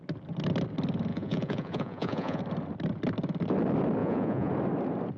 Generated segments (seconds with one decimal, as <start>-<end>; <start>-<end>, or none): 1.1-2.4; 4.0-4.5